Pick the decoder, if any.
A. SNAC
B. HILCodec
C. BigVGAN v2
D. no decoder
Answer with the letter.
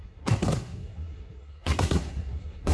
A